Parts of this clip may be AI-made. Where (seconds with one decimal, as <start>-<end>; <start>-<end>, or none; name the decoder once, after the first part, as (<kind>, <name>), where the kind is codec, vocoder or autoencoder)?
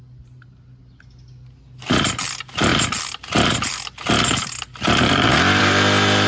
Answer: none